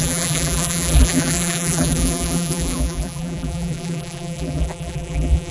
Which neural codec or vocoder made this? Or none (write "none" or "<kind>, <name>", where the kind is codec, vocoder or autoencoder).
vocoder, BigVGAN v2